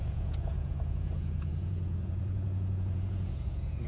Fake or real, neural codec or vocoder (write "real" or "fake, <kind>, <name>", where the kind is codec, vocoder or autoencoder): fake, vocoder, Vocos